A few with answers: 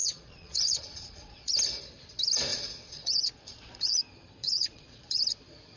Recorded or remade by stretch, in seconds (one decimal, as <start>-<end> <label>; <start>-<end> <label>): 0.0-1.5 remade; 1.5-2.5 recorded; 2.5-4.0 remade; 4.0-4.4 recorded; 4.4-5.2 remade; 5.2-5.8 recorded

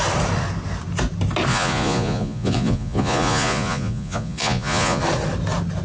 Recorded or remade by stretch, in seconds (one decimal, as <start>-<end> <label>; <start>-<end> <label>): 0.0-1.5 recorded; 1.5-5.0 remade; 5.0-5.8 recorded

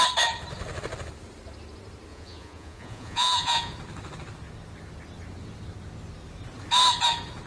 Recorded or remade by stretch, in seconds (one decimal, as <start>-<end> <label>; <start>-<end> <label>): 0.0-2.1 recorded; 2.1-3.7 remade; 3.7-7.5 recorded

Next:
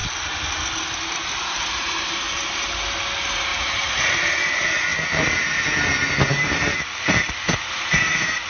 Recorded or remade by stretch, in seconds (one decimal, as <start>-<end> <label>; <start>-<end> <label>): 0.0-3.5 recorded; 3.5-4.1 remade; 4.1-8.5 recorded